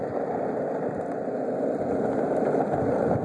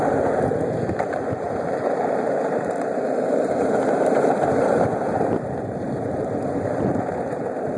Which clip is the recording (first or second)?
first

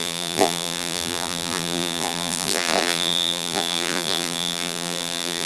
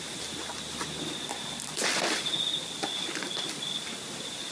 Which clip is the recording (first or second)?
second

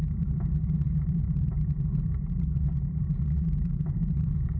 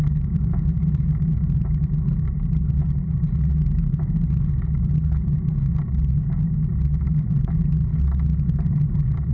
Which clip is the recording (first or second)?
second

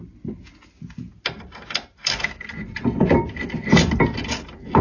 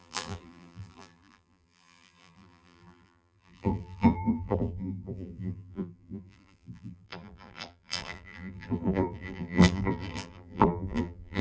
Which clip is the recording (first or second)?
first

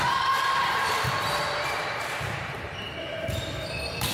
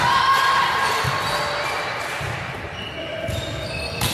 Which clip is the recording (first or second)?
second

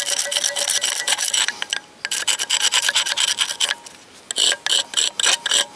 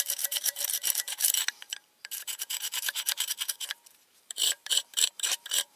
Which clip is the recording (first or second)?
first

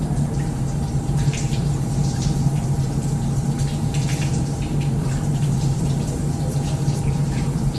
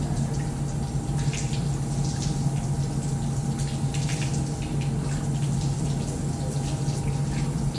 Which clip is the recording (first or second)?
second